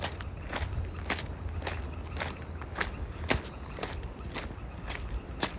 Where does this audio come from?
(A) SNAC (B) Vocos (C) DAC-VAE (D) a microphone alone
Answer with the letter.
D